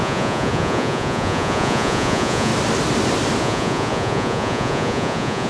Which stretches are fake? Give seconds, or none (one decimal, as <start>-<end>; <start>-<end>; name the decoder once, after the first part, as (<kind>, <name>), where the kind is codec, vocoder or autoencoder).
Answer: 0.0-2.5 (vocoder, Vocos); 3.4-5.5